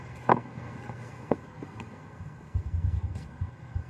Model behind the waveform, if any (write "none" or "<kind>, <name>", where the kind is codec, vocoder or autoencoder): codec, SNAC